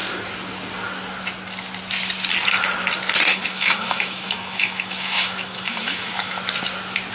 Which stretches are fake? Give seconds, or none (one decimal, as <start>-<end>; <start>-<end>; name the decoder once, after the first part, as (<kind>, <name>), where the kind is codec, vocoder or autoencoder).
3.3-6.4 (autoencoder, DAC-VAE)